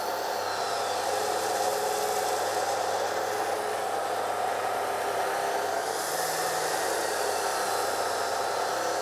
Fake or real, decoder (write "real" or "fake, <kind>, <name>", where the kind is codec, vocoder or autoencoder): real